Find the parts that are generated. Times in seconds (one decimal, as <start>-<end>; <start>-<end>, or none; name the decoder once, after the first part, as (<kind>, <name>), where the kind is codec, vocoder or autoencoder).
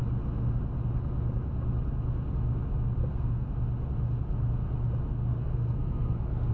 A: 3.0-3.5 (codec, SNAC); 5.3-6.5